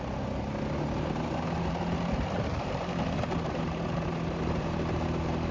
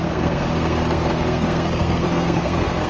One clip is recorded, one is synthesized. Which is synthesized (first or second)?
second